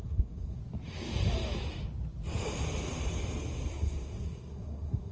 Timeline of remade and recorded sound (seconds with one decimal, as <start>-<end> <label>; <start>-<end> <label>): 0.0-0.6 remade; 0.6-3.7 recorded; 3.7-5.1 remade